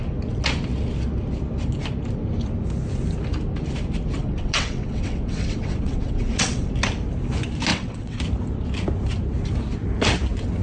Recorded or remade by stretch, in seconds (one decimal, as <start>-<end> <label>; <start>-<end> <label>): 0.0-4.2 recorded; 4.2-6.7 remade; 6.7-7.7 recorded; 7.7-8.2 remade; 8.2-10.6 recorded